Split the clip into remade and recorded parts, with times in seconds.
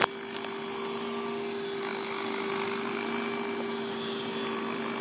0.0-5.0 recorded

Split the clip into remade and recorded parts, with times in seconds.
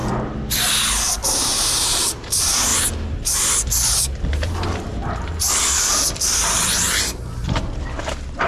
0.0-1.1 recorded; 1.1-2.7 remade; 2.7-4.3 recorded; 4.3-5.0 remade; 5.0-7.3 recorded; 7.3-8.5 remade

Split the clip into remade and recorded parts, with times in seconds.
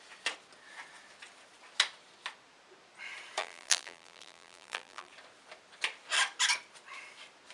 0.0-3.4 recorded; 3.4-5.1 remade; 5.1-7.5 recorded